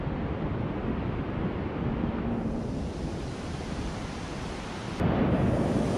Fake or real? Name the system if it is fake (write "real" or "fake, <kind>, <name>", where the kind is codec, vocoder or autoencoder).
real